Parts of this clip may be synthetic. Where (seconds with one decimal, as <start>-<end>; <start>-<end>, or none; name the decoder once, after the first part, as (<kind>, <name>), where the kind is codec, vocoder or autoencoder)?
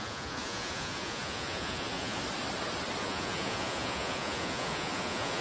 0.0-2.2 (vocoder, Vocos); 3.0-5.4